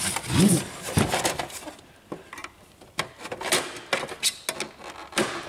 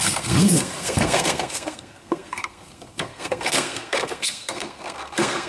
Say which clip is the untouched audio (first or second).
first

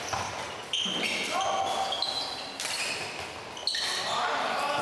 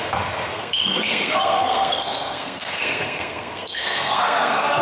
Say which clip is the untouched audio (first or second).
first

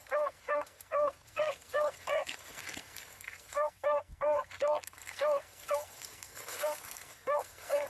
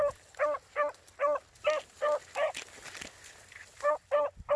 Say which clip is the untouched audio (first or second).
second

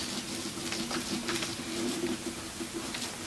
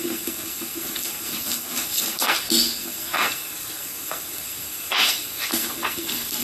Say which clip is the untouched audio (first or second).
first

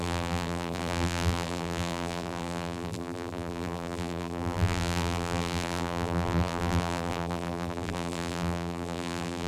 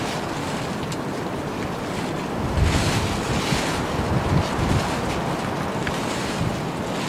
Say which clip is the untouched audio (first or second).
second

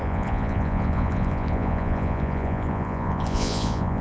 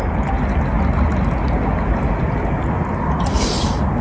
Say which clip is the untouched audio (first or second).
second